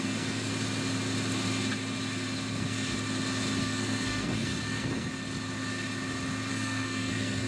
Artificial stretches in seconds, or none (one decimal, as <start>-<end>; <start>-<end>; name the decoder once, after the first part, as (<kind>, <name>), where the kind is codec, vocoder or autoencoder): 0.0-0.5 (codec, SNAC); 2.5-2.9; 3.6-5.1; 6.5-7.5

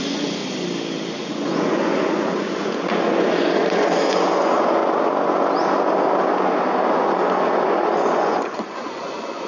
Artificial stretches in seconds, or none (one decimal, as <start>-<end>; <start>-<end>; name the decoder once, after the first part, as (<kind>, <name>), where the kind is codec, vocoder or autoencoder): 0.0-0.4 (vocoder, Vocos); 1.2-4.8; 6.9-9.5